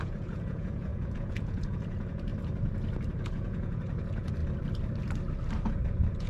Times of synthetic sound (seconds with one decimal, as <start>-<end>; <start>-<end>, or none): 0.0-2.3; 3.2-4.4; 5.8-6.3